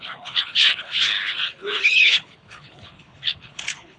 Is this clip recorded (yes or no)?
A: no